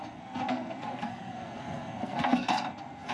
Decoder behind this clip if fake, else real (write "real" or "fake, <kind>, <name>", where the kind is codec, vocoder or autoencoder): fake, codec, SNAC